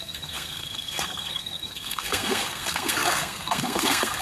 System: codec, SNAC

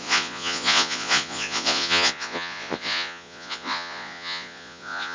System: vocoder, Vocos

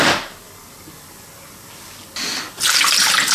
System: none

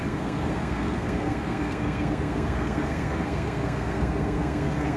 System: codec, SNAC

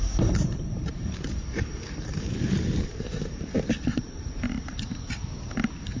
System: vocoder, BigVGAN v2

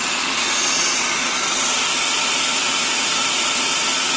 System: none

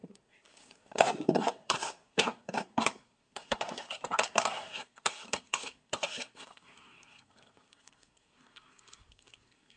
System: codec, SNAC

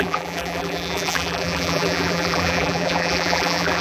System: vocoder, BigVGAN v2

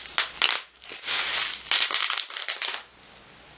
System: none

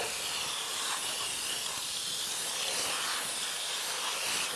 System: none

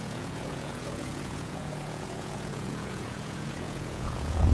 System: vocoder, Vocos